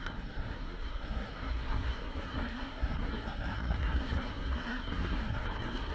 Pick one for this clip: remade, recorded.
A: remade